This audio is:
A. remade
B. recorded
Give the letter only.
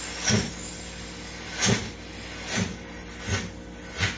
B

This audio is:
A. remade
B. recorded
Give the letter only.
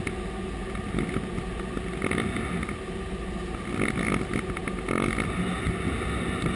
B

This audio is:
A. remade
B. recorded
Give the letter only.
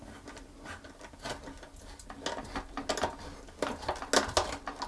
B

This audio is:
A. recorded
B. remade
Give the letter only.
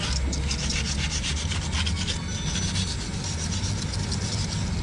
A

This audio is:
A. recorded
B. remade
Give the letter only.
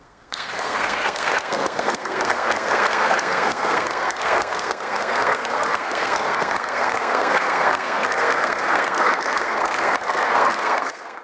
B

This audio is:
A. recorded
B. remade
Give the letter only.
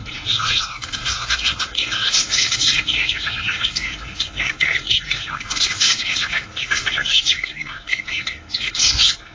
B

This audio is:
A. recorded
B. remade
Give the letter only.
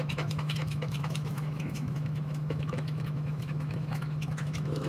B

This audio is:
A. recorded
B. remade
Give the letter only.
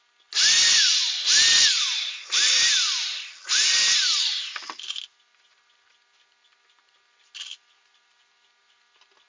A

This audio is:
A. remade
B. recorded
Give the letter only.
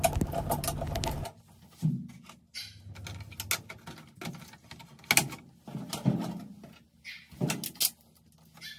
B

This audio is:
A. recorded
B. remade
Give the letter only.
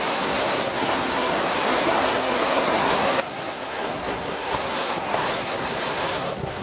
B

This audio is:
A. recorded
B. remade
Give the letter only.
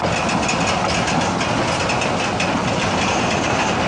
A